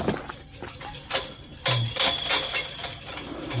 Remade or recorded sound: recorded